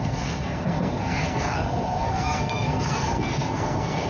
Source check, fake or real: fake